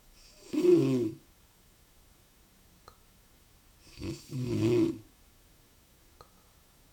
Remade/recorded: remade